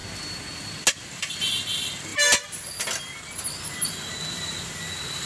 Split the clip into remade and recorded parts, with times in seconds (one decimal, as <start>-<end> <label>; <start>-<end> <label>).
0.0-5.3 recorded